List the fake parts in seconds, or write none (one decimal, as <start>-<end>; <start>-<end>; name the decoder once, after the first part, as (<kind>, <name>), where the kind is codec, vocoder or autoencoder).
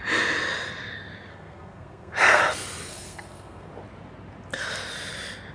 1.3-2.4 (codec, SNAC); 2.9-3.7